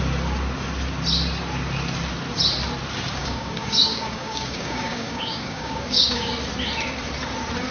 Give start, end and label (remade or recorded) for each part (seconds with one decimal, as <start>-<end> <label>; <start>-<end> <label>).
0.0-3.2 recorded; 3.2-6.3 remade; 6.3-7.7 recorded